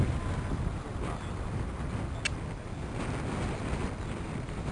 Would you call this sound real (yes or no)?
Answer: yes